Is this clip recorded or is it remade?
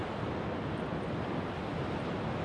recorded